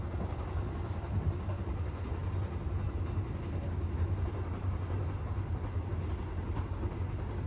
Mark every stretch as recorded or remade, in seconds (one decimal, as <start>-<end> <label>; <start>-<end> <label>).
0.0-7.5 recorded